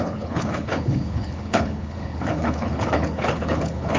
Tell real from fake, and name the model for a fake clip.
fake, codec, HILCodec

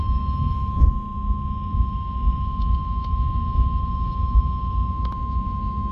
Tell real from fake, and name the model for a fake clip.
fake, autoencoder, DAC-VAE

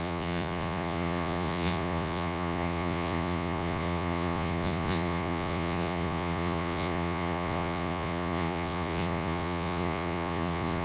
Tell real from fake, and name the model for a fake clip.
fake, vocoder, Vocos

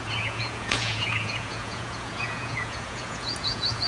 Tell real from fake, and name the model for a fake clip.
fake, vocoder, Vocos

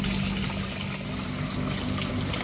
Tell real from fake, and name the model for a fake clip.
real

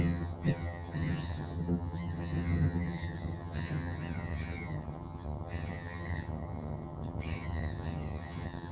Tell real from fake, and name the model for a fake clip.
fake, vocoder, HiFi-GAN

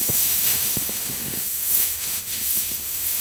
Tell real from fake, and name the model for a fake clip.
fake, autoencoder, DAC-VAE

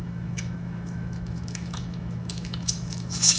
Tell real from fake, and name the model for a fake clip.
fake, autoencoder, DAC-VAE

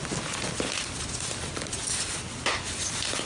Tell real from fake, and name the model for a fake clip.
real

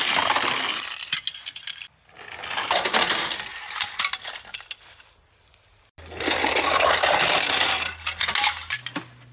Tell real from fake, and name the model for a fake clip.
real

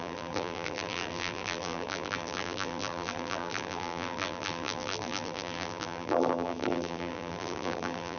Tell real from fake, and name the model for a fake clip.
fake, vocoder, BigVGAN v2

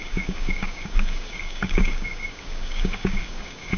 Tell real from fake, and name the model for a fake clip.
fake, codec, DAC